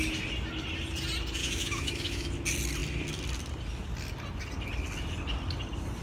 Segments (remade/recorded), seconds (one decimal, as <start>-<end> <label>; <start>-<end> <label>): 0.0-1.4 recorded; 1.4-2.3 remade; 2.3-6.0 recorded